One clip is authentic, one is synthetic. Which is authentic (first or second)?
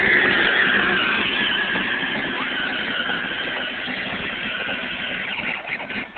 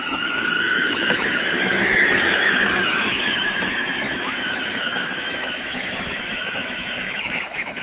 first